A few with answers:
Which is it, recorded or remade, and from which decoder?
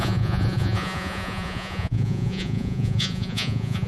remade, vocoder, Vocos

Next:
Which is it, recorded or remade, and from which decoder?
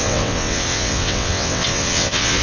remade, vocoder, WaveNeXt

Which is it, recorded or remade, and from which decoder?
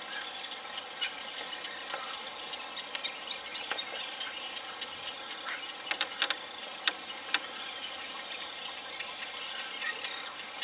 recorded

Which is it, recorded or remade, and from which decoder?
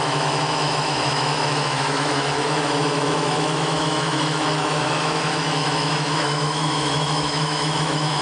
remade, autoencoder, DAC-VAE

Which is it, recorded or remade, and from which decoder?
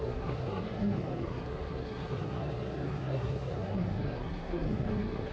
remade, codec, SNAC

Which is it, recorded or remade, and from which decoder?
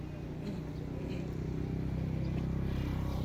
recorded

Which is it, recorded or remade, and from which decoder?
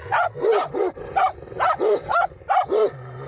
recorded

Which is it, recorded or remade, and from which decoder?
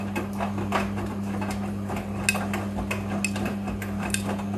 recorded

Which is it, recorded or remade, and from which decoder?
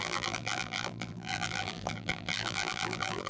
remade, vocoder, BigVGAN v2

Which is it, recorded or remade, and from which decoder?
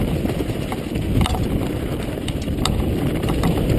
remade, vocoder, BigVGAN v2